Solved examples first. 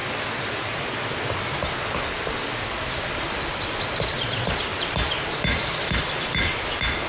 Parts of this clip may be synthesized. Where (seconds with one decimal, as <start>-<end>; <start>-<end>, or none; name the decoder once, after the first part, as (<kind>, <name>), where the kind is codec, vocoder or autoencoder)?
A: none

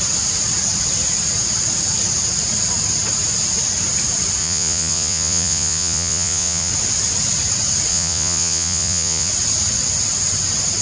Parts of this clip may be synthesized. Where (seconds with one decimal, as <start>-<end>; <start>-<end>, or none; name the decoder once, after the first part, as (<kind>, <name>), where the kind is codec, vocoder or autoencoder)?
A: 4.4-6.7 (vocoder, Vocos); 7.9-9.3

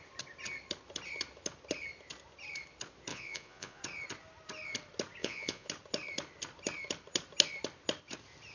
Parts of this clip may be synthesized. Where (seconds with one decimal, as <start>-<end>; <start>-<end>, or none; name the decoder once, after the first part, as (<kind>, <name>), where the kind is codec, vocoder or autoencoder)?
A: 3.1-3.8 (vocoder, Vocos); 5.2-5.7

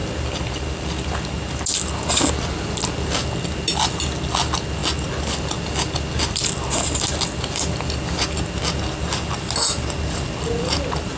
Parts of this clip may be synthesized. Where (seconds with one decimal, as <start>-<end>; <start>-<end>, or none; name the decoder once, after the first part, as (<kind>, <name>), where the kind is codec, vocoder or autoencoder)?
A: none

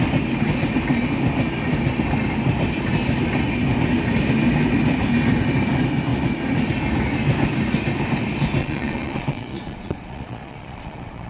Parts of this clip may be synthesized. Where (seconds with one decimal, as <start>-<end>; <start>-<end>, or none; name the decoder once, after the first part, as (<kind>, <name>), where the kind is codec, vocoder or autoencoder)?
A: 8.6-11.3 (vocoder, Vocos)

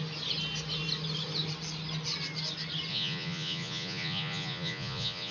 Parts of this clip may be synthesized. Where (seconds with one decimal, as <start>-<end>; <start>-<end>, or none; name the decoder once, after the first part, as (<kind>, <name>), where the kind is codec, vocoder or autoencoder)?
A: 2.9-5.3 (vocoder, Vocos)

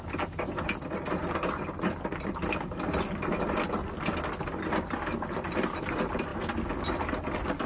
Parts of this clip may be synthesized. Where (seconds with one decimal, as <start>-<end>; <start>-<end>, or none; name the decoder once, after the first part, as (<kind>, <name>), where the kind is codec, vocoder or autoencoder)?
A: none